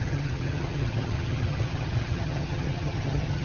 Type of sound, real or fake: fake